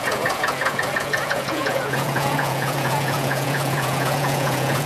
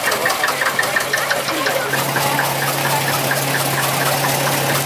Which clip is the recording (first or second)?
second